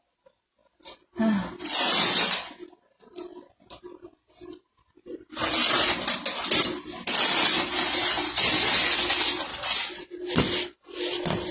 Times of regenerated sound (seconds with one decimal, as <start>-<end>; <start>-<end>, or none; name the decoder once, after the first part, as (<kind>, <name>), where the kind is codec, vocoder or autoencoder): none